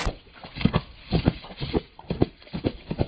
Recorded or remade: recorded